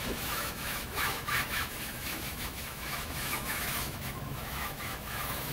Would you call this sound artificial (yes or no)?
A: yes